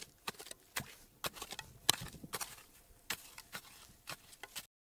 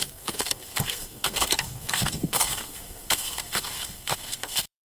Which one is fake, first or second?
second